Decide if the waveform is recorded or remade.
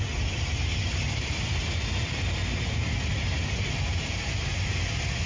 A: recorded